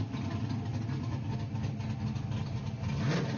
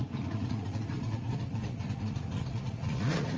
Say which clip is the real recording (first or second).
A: first